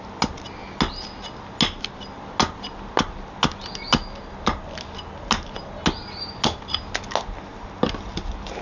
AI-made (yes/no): no